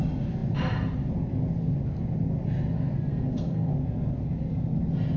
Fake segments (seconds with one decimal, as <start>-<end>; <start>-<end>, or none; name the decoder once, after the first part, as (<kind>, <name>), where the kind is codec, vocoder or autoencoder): 3.1-3.7 (codec, SNAC)